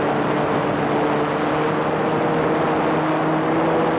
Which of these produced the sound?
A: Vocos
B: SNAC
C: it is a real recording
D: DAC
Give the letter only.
C